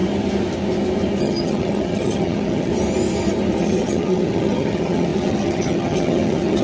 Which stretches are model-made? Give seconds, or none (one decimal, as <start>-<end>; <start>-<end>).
1.2-2.7; 3.6-6.6